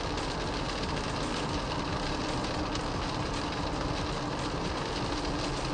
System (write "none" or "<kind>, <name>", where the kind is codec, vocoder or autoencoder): none